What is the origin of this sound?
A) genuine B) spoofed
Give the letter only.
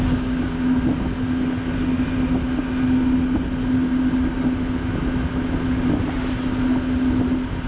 A